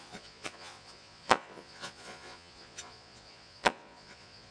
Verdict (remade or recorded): remade